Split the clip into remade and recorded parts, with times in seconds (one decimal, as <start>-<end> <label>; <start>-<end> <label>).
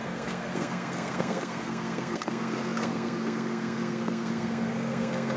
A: 0.0-5.4 remade